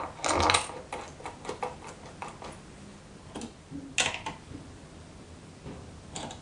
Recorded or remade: recorded